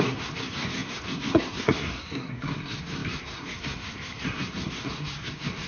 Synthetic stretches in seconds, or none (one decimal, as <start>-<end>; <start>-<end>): 0.0-5.7